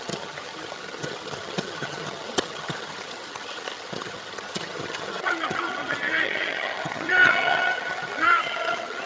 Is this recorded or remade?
remade